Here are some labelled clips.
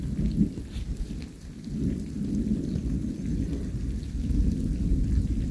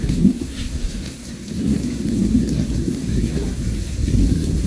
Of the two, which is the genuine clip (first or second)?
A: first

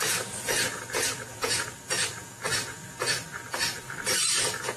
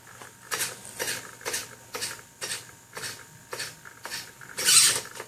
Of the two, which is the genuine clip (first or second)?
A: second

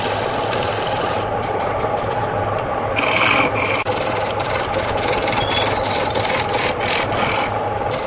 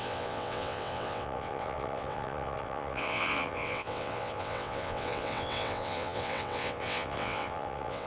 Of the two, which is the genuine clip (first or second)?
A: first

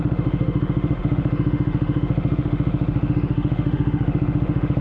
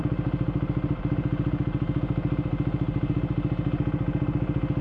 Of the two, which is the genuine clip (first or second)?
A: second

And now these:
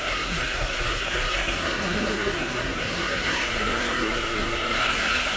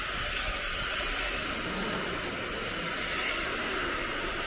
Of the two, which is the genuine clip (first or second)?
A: second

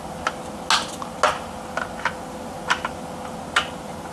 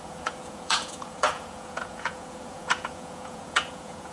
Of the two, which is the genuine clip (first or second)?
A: first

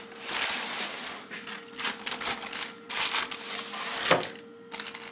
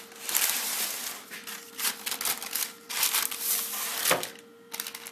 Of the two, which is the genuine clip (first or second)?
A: first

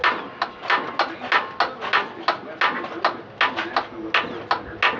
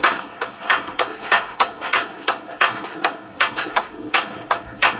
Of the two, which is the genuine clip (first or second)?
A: first